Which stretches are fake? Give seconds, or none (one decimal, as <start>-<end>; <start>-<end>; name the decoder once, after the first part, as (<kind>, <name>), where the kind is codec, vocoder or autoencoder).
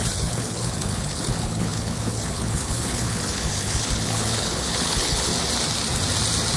0.0-5.3 (codec, HILCodec)